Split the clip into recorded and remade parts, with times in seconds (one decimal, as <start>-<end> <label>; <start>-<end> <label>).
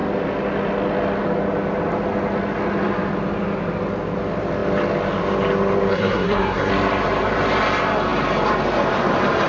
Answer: 0.0-5.9 recorded; 5.9-6.7 remade; 6.7-9.5 recorded